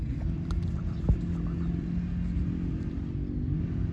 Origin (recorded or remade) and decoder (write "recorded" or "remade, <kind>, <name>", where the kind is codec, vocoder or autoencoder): recorded